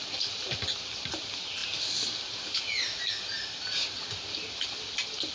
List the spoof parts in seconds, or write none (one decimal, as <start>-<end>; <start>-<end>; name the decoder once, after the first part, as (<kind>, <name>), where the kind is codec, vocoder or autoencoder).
none